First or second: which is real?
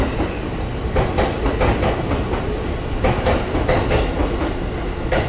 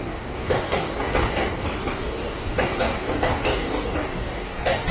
first